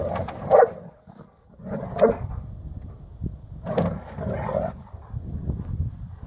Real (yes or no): yes